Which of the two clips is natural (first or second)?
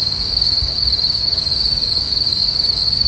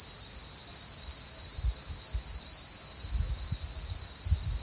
second